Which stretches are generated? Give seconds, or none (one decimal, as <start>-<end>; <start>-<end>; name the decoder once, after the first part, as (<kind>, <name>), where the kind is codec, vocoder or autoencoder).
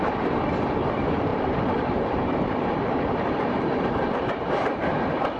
1.3-4.5 (vocoder, BigVGAN v2)